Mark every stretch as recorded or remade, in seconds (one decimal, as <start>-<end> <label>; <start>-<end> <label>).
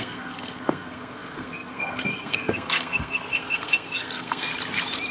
0.0-4.5 remade; 4.5-5.1 recorded